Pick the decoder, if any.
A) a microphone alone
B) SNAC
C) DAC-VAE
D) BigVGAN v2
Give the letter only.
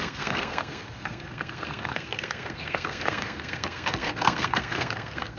B